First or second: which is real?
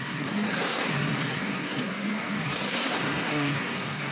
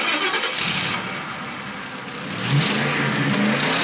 second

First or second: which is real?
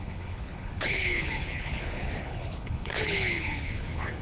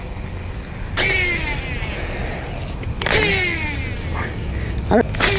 second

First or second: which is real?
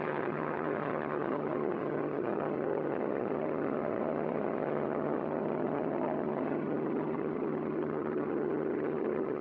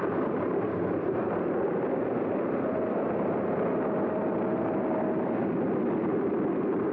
second